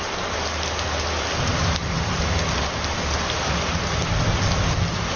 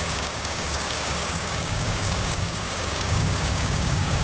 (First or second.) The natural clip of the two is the first